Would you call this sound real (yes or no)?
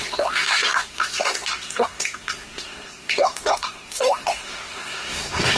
no